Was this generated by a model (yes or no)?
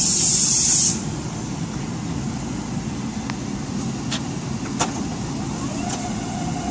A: no